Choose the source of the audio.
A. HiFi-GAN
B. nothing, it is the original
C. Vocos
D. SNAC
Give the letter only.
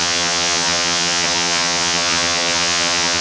A